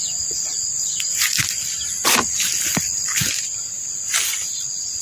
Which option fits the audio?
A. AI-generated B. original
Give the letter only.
B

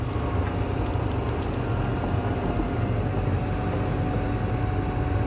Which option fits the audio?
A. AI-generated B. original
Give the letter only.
B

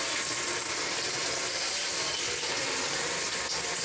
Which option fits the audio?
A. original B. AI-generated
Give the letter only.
B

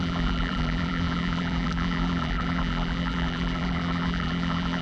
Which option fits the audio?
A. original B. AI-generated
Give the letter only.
B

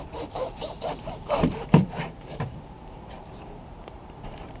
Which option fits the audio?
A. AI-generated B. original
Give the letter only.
A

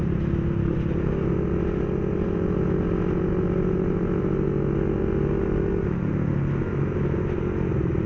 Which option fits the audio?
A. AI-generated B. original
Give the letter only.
B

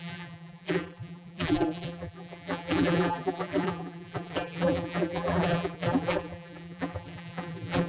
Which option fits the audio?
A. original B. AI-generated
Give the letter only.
B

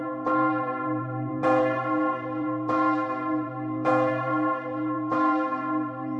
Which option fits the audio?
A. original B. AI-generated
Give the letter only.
B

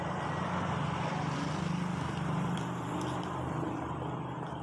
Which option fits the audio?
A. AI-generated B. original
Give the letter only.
A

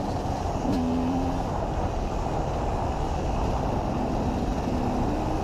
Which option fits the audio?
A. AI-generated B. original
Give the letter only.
B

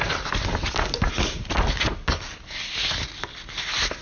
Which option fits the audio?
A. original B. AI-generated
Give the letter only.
A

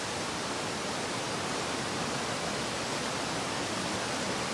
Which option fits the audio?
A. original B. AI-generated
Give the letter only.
A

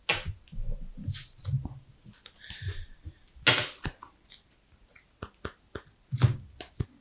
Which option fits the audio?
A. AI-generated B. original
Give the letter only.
B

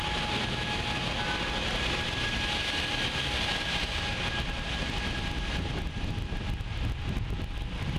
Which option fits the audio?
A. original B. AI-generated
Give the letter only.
A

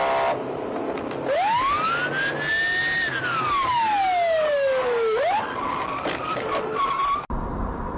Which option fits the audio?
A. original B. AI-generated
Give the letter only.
A